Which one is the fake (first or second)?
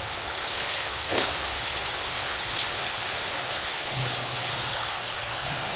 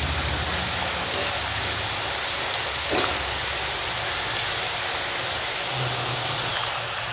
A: first